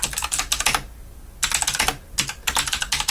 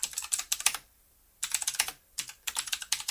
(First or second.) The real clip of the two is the first